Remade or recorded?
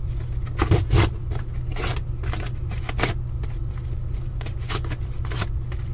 recorded